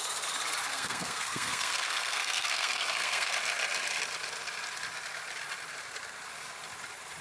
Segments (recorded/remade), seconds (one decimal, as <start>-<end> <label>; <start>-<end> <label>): 0.0-0.7 recorded; 0.7-3.3 remade; 3.3-7.2 recorded